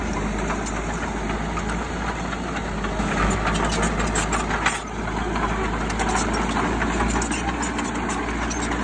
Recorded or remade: recorded